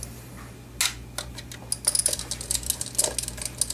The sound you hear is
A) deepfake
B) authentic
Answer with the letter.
B